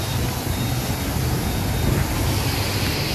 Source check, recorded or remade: recorded